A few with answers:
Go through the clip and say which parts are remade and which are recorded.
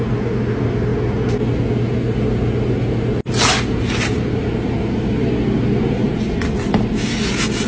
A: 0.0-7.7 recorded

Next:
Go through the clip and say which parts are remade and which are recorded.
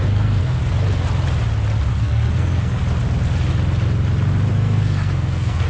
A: 0.0-0.6 remade; 0.6-1.9 recorded; 1.9-2.8 remade; 2.8-4.5 recorded; 4.5-5.7 remade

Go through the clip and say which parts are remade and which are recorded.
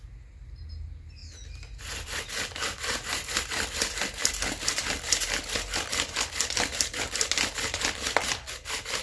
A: 0.0-9.0 recorded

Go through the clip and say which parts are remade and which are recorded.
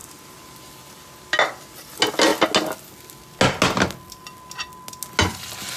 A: 0.0-5.2 recorded; 5.2-5.8 remade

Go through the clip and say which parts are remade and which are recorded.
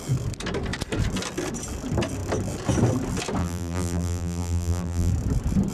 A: 0.0-3.4 recorded; 3.4-5.1 remade; 5.1-5.7 recorded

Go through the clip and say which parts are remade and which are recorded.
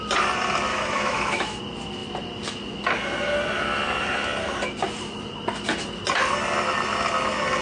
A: 0.0-0.7 recorded; 0.7-1.6 remade; 1.6-7.6 recorded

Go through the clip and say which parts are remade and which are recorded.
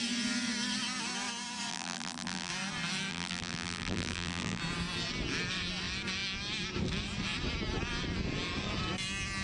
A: 0.0-1.7 recorded; 1.7-2.5 remade; 2.5-3.1 recorded; 3.1-4.6 remade; 4.6-9.4 recorded